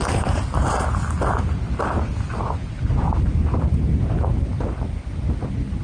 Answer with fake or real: real